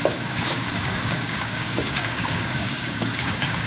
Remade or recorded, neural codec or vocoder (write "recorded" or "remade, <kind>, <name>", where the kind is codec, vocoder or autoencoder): remade, codec, DAC